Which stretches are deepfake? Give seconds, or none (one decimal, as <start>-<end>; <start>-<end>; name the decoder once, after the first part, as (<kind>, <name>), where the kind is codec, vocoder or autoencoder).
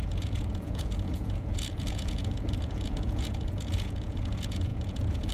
0.0-5.3 (vocoder, Vocos)